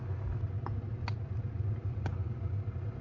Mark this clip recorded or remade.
recorded